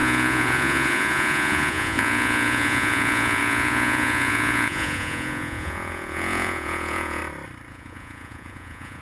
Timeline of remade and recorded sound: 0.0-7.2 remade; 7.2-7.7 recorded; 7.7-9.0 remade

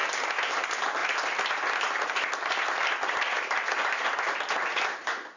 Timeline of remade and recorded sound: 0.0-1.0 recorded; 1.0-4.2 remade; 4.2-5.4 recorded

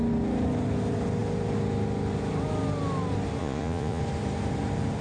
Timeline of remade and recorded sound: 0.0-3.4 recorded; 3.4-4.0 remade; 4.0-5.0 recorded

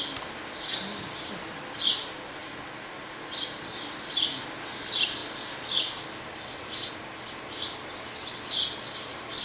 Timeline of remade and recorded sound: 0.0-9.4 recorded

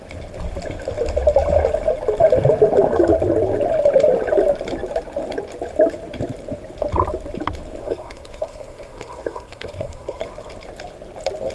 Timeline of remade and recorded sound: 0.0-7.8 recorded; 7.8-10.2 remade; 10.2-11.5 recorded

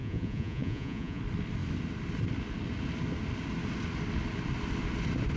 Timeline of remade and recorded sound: 0.0-1.2 remade; 1.2-5.4 recorded

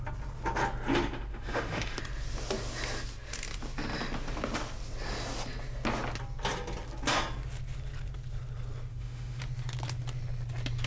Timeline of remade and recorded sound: 0.0-1.3 recorded; 1.3-2.0 remade; 2.0-8.9 recorded; 8.9-9.4 remade; 9.4-10.9 recorded

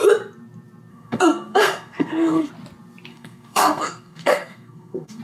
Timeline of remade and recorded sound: 0.0-0.9 recorded; 0.9-2.5 remade; 2.5-3.1 recorded; 3.1-5.2 remade